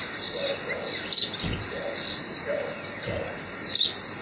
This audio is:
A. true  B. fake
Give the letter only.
A